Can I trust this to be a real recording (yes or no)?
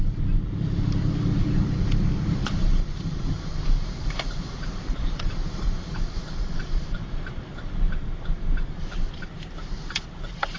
no